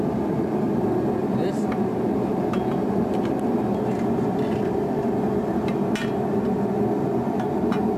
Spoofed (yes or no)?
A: yes